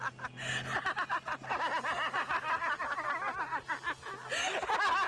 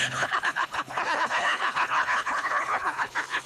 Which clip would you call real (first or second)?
first